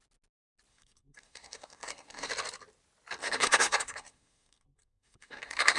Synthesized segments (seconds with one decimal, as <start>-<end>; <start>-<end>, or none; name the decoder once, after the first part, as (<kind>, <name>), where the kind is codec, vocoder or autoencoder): 0.7-2.3 (codec, SNAC); 3.2-5.8